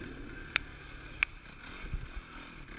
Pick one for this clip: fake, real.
real